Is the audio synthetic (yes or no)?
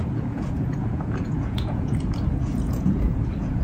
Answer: yes